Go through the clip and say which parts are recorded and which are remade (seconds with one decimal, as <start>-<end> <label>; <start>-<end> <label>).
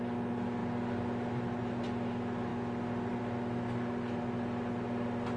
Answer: 0.0-5.4 recorded